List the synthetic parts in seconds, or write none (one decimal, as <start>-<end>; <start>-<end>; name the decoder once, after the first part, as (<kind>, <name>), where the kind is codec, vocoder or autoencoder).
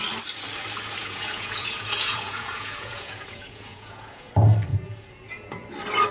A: 1.0-4.3 (vocoder, Vocos); 4.7-5.5